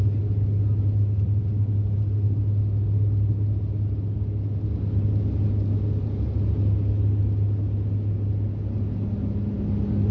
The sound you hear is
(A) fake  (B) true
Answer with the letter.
B